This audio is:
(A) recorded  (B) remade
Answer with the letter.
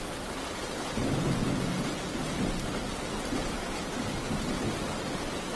A